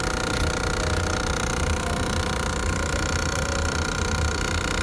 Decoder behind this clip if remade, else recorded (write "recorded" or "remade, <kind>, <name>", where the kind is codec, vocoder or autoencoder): recorded